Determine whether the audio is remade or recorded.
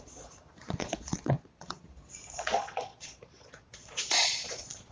remade